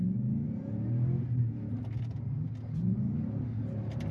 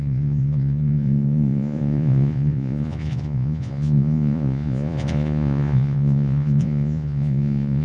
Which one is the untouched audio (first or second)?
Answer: first